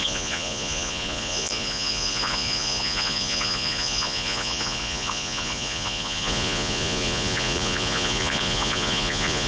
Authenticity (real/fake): fake